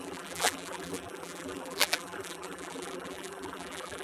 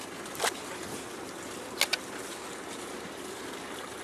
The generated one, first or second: first